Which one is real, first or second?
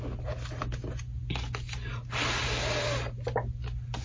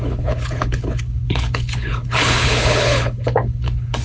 first